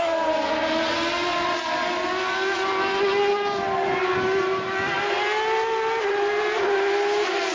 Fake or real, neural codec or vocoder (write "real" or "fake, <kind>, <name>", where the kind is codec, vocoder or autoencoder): real